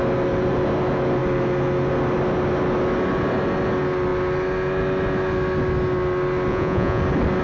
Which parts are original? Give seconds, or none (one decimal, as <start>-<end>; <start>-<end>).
0.0-6.5; 7.0-7.4